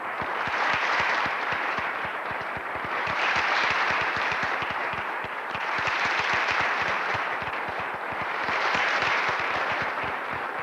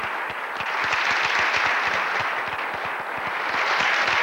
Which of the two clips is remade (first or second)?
first